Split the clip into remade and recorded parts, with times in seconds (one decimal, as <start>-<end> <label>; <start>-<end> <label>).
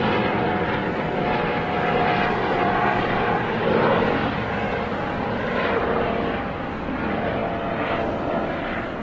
0.0-7.4 remade; 7.4-8.3 recorded; 8.3-9.0 remade